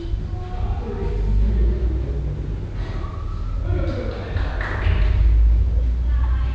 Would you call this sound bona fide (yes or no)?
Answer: yes